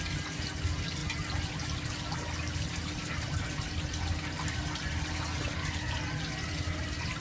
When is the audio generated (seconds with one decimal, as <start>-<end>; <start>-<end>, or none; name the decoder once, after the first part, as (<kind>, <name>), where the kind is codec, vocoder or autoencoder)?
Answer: none